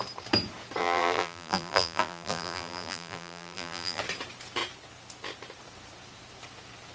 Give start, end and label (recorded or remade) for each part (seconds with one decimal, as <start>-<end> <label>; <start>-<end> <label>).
0.0-0.8 recorded; 0.8-4.0 remade; 4.0-6.9 recorded